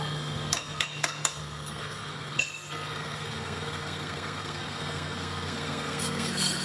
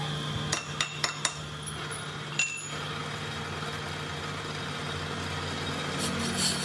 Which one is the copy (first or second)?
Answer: first